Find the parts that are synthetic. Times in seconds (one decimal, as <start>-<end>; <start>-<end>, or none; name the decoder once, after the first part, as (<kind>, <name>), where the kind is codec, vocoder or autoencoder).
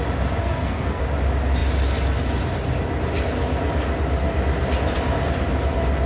0.4-1.0 (codec, SNAC)